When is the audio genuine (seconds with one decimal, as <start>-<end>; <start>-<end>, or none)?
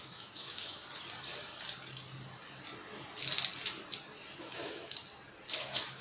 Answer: 0.8-4.4; 5.0-5.6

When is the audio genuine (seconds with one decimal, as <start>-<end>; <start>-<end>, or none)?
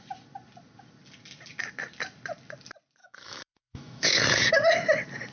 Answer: 0.0-3.0; 4.5-5.3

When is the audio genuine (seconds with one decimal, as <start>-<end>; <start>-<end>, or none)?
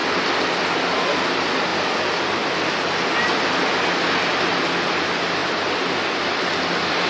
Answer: 0.0-7.1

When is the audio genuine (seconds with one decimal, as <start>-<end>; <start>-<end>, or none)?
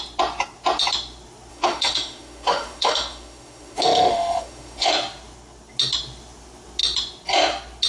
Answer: 0.0-1.5; 4.9-7.9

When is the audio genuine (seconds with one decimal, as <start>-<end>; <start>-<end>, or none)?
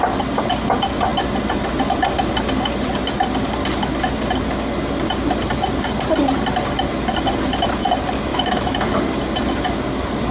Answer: 0.0-8.3; 8.9-10.3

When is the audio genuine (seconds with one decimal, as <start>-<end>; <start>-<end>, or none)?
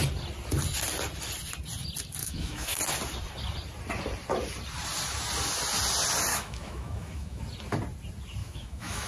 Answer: 0.0-2.2; 2.8-6.3; 7.4-8.4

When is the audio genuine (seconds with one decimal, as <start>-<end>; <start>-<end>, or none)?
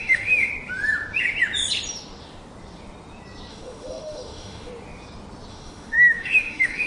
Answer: 0.5-3.5; 4.7-5.5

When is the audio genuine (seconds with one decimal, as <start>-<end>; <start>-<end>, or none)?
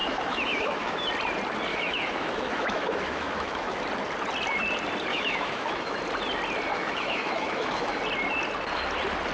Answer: 1.1-1.7; 3.8-5.1; 6.0-6.7; 8.0-9.3